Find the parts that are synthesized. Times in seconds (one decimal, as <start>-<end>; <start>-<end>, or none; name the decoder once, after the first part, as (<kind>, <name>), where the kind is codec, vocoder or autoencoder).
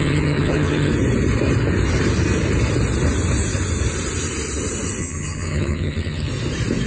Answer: 0.0-0.9 (vocoder, HiFi-GAN); 5.0-6.3